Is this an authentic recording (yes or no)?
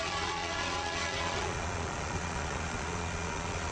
no